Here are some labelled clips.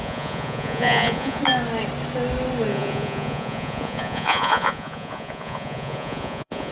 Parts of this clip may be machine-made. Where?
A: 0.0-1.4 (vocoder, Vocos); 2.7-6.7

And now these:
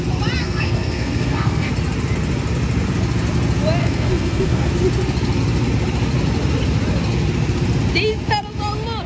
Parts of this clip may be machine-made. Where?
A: 0.4-1.7 (codec, SNAC); 3.8-4.7